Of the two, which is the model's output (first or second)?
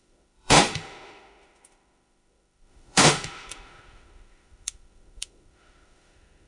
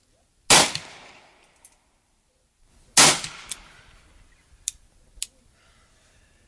first